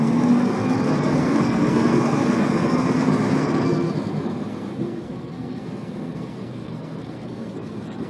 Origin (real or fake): fake